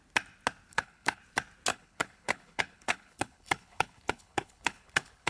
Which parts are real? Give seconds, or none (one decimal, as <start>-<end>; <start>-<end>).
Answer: 0.0-0.7; 1.2-1.7